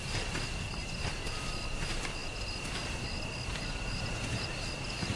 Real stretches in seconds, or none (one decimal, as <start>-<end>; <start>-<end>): 0.0-5.2